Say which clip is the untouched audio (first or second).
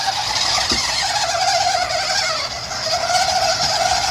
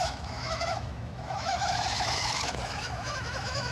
first